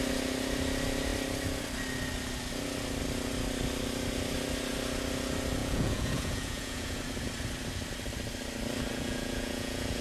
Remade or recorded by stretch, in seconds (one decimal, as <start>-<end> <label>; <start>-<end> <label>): 0.0-5.6 recorded; 5.6-7.0 remade; 7.0-8.9 recorded; 8.9-10.0 remade